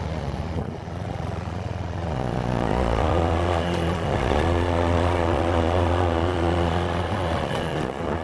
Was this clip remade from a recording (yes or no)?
yes